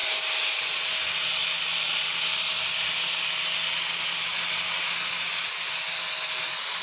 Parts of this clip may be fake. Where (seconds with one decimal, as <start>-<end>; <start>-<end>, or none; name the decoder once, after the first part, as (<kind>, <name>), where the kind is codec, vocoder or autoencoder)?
none